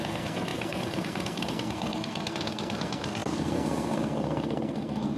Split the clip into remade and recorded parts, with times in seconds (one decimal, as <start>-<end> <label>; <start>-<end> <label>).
0.0-5.2 remade